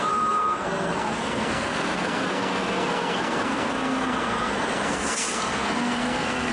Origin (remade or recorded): remade